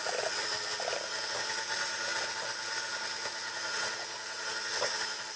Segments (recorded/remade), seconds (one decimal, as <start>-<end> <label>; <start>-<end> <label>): 0.0-5.4 recorded